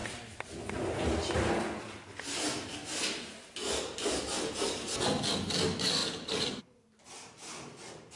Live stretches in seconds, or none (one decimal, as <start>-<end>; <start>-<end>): 0.0-8.2